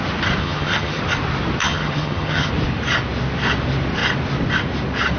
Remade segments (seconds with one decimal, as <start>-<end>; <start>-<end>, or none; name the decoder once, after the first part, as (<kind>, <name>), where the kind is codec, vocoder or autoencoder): 0.4-1.0 (vocoder, HiFi-GAN); 1.6-2.5